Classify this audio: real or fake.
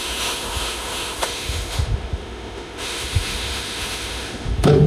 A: fake